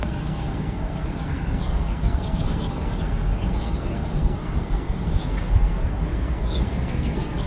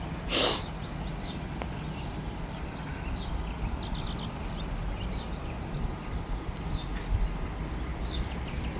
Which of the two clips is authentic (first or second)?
second